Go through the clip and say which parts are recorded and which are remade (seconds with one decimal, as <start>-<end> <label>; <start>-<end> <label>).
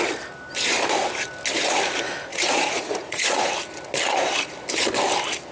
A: 0.0-2.3 recorded; 2.3-3.5 remade; 3.5-5.5 recorded